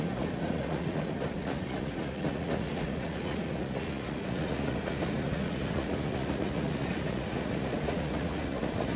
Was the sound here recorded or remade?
remade